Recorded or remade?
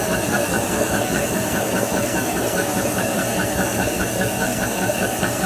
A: remade